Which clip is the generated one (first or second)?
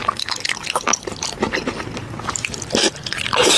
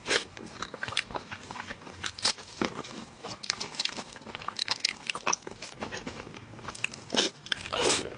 second